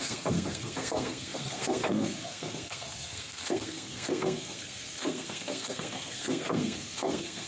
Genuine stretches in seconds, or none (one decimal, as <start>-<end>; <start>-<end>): none